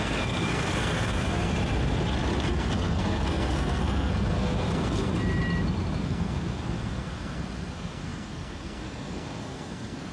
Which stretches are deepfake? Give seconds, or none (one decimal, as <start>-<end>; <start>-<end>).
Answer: 0.0-1.5; 2.4-5.1; 6.0-10.1